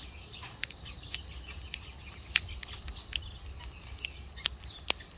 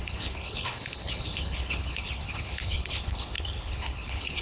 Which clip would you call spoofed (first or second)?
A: second